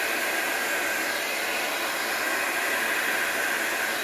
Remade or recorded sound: recorded